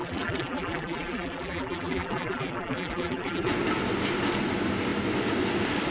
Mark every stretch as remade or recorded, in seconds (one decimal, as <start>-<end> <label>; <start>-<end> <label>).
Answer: 0.0-3.5 remade; 3.5-5.9 recorded